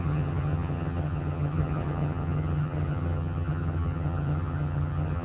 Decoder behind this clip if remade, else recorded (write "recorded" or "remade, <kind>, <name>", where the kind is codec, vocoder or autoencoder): remade, vocoder, HiFi-GAN